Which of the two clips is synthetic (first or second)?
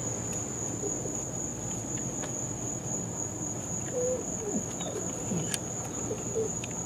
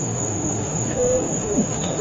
second